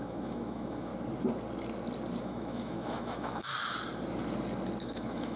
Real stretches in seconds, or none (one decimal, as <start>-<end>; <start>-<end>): 0.9-2.2; 3.5-4.8